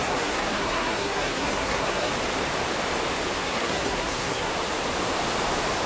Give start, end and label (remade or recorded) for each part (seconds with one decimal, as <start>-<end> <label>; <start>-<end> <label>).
0.0-2.1 remade; 2.1-3.4 recorded; 3.4-4.5 remade; 4.5-5.9 recorded